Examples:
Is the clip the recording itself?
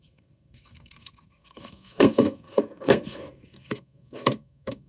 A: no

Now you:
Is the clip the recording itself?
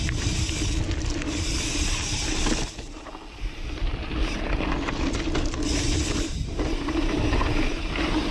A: yes